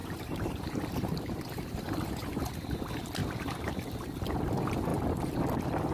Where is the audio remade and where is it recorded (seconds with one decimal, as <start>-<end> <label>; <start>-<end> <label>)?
0.0-2.5 remade; 2.5-4.9 recorded; 4.9-5.4 remade; 5.4-5.9 recorded